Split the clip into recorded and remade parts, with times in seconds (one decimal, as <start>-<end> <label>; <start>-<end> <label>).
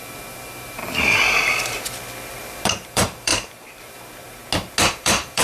0.0-0.8 remade; 0.8-2.3 recorded; 2.3-3.3 remade; 3.3-3.8 recorded; 3.8-4.4 remade; 4.4-4.9 recorded; 4.9-5.4 remade